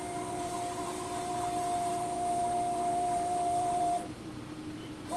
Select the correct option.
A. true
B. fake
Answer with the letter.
B